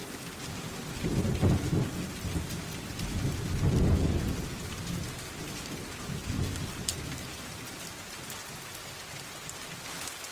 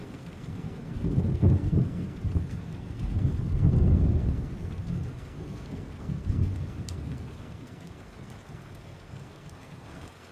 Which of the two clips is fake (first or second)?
second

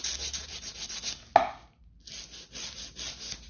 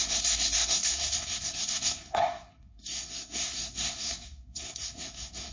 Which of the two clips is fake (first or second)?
second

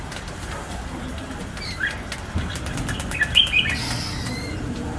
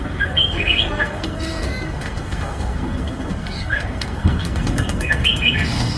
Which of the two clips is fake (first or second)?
second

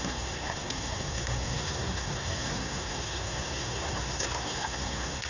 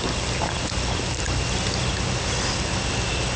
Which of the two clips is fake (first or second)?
first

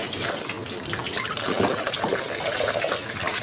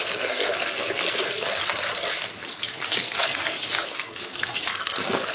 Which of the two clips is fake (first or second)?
second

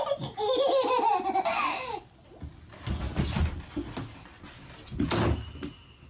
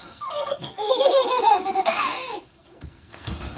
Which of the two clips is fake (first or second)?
second